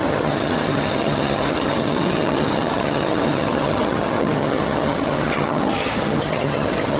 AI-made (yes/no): yes